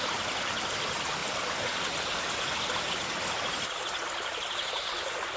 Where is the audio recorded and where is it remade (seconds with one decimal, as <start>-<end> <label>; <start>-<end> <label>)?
0.0-5.4 recorded